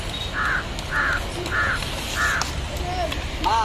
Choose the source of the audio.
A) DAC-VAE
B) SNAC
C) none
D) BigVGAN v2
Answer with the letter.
C